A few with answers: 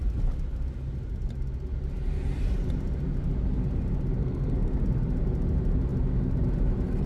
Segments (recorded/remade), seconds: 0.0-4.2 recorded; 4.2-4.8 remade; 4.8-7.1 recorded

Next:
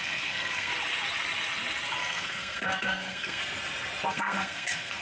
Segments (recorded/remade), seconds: 0.0-0.7 remade; 0.7-2.0 recorded; 2.0-3.4 remade; 3.4-4.1 recorded; 4.1-5.0 remade